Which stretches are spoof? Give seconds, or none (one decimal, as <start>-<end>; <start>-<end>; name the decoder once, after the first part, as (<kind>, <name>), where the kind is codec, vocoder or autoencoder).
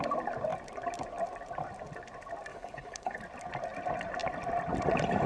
2.5-3.2 (codec, HILCodec)